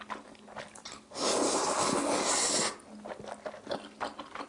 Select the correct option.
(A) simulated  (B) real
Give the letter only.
B